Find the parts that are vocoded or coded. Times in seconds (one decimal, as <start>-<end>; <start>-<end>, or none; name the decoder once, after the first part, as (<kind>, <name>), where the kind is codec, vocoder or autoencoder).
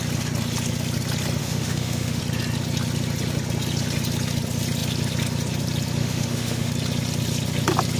1.4-2.2 (autoencoder, DAC-VAE); 6.0-6.7